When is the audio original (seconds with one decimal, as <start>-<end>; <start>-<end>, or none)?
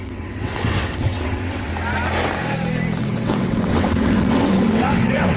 1.7-3.0